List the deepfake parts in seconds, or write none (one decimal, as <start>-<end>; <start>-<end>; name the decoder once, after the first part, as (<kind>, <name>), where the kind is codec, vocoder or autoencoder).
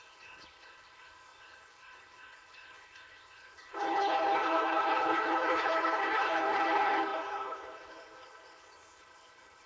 0.0-9.7 (codec, HILCodec)